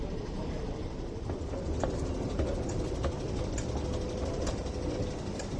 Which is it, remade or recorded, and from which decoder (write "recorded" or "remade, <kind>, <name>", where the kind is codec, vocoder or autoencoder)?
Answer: recorded